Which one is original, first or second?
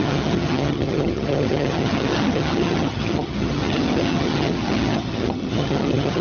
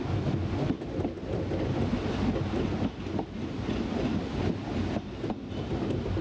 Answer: second